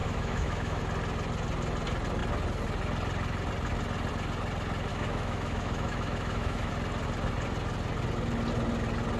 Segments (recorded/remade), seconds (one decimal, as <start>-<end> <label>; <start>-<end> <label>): 0.0-0.8 remade; 0.8-4.9 recorded; 4.9-6.7 remade; 6.7-9.2 recorded

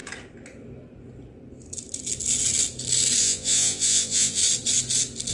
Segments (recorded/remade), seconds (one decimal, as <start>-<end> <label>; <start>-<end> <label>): 0.0-3.2 recorded; 3.2-4.4 remade; 4.4-5.3 recorded